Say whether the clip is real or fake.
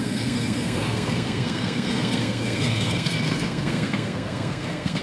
fake